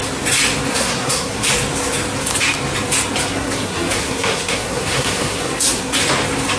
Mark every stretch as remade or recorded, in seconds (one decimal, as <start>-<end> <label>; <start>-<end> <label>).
0.0-0.7 recorded; 0.7-1.5 remade; 1.5-3.3 recorded; 3.3-6.0 remade; 6.0-6.6 recorded